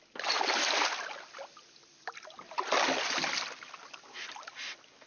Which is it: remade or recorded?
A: recorded